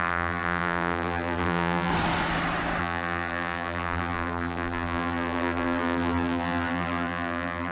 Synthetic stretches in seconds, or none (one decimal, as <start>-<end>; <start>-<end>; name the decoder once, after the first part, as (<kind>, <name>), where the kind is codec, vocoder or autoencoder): 0.0-1.9 (vocoder, BigVGAN v2); 2.8-7.7